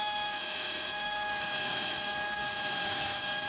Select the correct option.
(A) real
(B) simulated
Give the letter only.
B